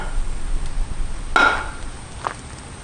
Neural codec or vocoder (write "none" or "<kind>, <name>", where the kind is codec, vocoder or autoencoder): none